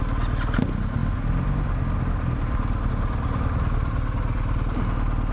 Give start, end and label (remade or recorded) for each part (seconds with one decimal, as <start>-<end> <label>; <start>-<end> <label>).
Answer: 0.0-5.3 recorded